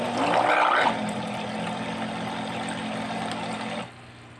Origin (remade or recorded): recorded